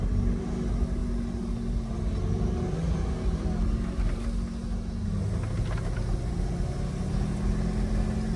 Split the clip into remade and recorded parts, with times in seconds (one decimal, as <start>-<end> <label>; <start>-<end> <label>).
0.0-8.4 recorded